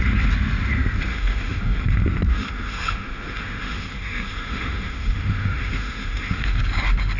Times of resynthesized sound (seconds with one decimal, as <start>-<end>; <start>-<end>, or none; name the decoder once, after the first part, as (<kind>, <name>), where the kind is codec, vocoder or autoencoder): 1.1-1.8 (autoencoder, DAC-VAE); 2.3-6.6